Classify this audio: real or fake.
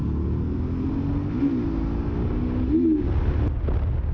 real